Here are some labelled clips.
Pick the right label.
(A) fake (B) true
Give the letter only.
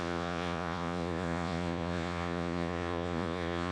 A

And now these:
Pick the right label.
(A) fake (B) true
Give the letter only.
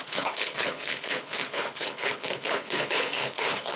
A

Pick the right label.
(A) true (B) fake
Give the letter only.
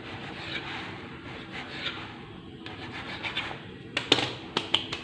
A